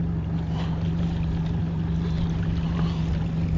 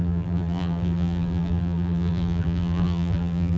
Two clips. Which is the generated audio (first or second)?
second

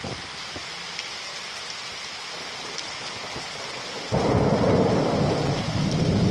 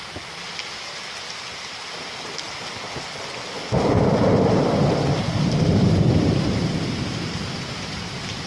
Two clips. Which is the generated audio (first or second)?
second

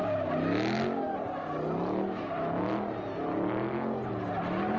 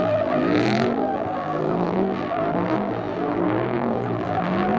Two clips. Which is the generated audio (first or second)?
second